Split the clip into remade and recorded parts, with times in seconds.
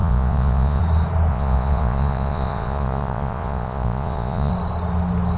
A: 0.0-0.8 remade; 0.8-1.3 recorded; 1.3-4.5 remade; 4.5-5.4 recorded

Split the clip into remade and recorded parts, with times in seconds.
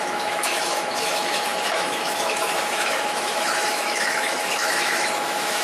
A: 0.0-5.6 remade